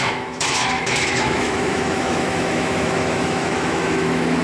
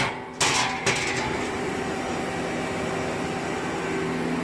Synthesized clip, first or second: first